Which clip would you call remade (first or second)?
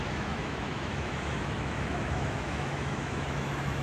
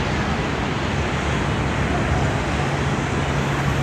first